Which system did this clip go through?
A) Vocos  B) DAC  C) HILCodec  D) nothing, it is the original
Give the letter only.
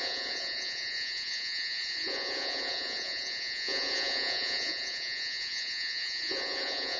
A